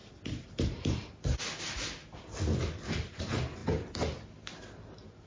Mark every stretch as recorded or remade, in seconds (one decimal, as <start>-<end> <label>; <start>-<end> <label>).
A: 0.0-5.3 recorded